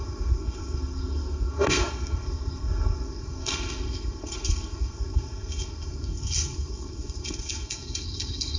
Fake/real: fake